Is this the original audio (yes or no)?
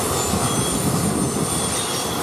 yes